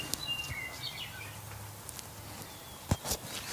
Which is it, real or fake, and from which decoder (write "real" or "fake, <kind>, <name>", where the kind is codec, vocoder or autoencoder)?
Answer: real